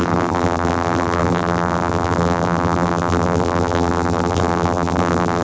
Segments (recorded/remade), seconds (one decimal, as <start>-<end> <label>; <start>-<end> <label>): 0.0-5.4 remade